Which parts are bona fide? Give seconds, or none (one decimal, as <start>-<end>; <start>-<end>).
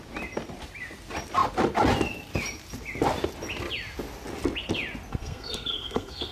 0.0-5.1